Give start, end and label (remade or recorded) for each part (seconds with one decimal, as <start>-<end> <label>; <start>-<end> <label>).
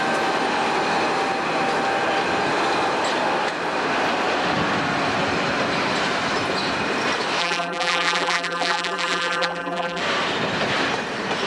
0.0-7.4 recorded; 7.4-10.0 remade; 10.0-11.5 recorded